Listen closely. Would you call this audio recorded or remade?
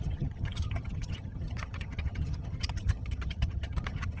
remade